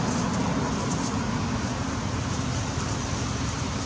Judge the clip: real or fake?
real